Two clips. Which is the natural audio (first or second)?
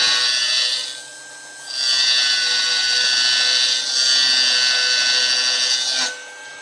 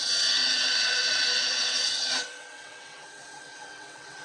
first